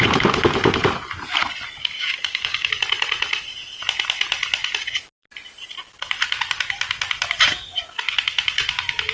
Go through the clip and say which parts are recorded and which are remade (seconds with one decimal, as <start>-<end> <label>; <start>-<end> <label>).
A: 0.0-1.8 recorded; 1.8-2.7 remade; 2.7-9.1 recorded